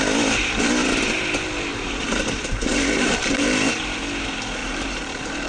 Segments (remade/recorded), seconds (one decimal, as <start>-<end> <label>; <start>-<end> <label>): 0.0-1.7 recorded; 1.7-3.7 remade; 3.7-4.6 recorded; 4.6-5.5 remade